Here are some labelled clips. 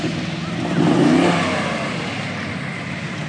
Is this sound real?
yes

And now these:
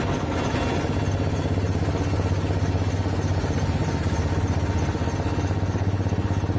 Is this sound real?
yes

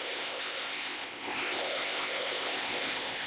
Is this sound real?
no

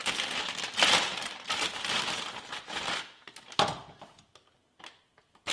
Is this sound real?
yes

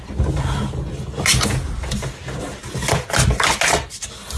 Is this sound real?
yes